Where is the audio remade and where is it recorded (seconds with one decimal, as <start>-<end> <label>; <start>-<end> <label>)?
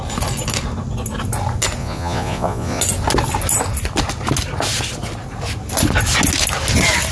0.0-1.8 recorded; 1.8-2.8 remade; 2.8-7.1 recorded